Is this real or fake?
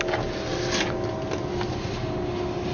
real